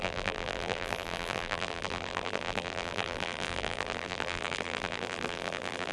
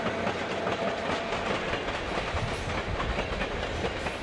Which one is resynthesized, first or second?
first